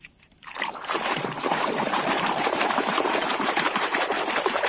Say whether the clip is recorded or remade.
remade